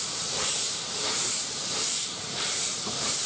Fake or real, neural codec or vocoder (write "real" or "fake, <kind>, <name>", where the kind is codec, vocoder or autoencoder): fake, vocoder, BigVGAN v2